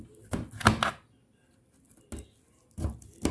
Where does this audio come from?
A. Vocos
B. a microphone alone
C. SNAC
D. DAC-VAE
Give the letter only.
B